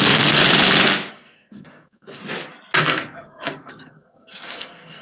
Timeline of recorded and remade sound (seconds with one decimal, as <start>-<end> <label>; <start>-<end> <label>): 0.0-0.4 remade; 0.4-1.1 recorded; 1.1-2.2 remade; 2.2-2.8 recorded; 2.8-5.0 remade